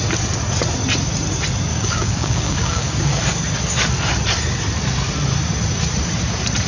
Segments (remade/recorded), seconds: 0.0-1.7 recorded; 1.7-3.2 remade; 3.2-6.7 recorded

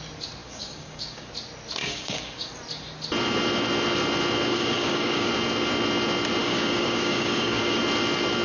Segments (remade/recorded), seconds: 0.0-0.4 recorded; 0.4-1.3 remade; 1.3-1.8 recorded; 1.8-2.5 remade; 2.5-4.5 recorded; 4.5-5.3 remade; 5.3-6.4 recorded; 6.4-7.8 remade; 7.8-8.4 recorded

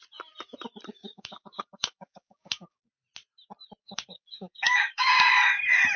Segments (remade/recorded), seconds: 0.0-1.0 recorded; 1.0-2.9 remade; 2.9-3.8 recorded; 3.8-5.3 remade; 5.3-6.0 recorded

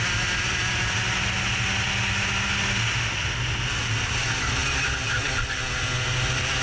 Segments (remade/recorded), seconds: 0.0-6.6 recorded

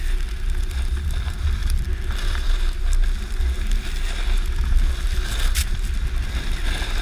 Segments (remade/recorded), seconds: 0.0-7.0 recorded

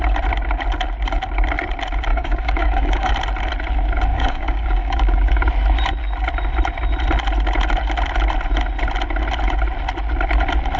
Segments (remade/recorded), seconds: 0.0-2.1 recorded; 2.1-3.1 remade; 3.1-4.1 recorded; 4.1-5.4 remade; 5.4-10.8 recorded

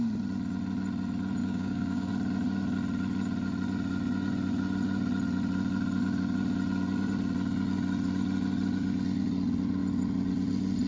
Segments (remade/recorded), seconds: 0.0-1.4 recorded; 1.4-2.1 remade; 2.1-10.9 recorded

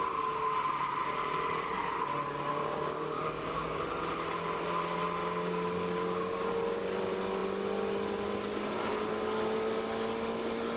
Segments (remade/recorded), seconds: 0.0-2.5 recorded; 2.5-3.8 remade; 3.8-5.2 recorded; 5.2-6.5 remade; 6.5-10.8 recorded